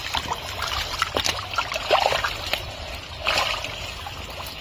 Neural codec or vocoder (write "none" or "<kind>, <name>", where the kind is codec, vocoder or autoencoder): none